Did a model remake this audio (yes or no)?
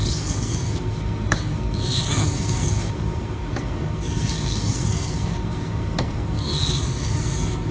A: yes